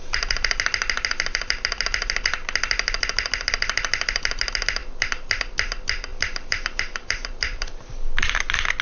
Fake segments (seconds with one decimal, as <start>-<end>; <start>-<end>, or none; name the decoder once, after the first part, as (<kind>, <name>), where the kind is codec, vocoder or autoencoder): 6.1-8.0 (vocoder, BigVGAN v2)